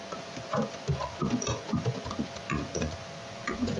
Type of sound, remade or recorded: remade